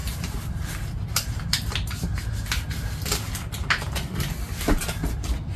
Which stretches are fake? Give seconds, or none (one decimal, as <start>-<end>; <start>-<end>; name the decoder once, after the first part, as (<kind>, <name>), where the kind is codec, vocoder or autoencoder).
none